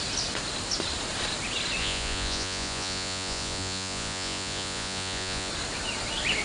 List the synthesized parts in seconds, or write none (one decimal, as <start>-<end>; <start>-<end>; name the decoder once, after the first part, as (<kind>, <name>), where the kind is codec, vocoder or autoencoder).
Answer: 1.8-5.5 (vocoder, Vocos)